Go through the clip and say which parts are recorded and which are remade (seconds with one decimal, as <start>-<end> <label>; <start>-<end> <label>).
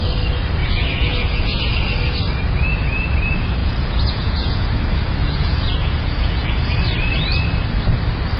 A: 0.0-0.6 recorded; 0.6-1.6 remade; 1.6-3.6 recorded; 3.6-4.7 remade; 4.7-5.2 recorded; 5.2-6.7 remade; 6.7-8.4 recorded